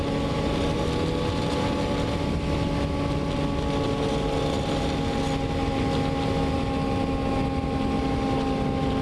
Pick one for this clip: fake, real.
real